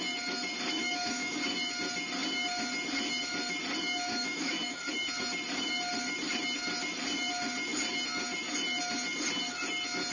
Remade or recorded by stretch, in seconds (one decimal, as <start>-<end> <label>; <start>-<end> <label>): 0.0-0.8 recorded; 0.8-1.4 remade; 1.4-4.1 recorded; 4.1-4.8 remade; 4.8-10.1 recorded